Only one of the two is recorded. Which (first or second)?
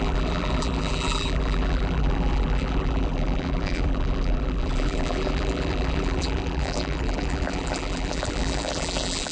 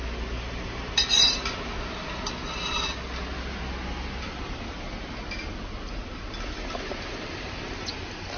second